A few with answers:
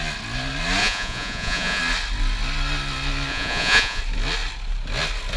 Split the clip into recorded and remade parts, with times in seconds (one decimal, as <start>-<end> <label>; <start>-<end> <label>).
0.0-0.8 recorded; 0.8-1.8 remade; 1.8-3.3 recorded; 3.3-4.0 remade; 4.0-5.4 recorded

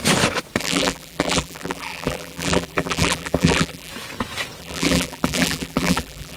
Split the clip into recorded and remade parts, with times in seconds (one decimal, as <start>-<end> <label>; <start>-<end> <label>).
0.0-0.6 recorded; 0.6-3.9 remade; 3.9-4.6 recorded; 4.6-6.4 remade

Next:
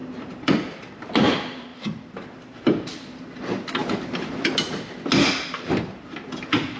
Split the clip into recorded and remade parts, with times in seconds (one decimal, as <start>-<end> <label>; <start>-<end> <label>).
0.0-1.0 remade; 1.0-1.7 recorded; 1.7-3.4 remade; 3.4-6.8 recorded

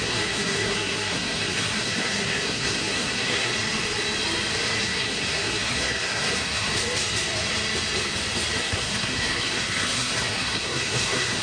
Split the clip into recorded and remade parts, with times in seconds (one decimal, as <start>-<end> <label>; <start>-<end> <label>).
0.0-3.5 remade; 3.5-4.8 recorded; 4.8-6.7 remade; 6.7-8.6 recorded; 8.6-11.4 remade

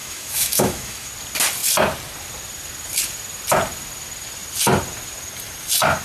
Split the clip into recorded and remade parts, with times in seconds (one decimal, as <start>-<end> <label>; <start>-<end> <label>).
0.0-1.1 remade; 1.1-6.0 recorded